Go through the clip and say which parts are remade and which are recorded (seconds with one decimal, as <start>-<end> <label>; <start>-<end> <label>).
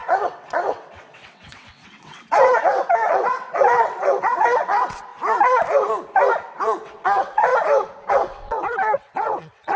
0.0-5.1 remade; 5.1-6.5 recorded; 6.5-7.5 remade; 7.5-8.1 recorded; 8.1-9.8 remade